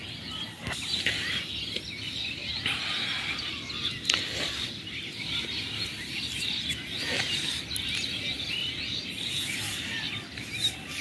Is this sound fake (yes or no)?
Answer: no